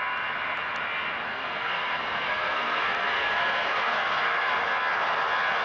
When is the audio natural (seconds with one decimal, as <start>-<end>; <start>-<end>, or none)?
0.0-1.3; 4.5-5.6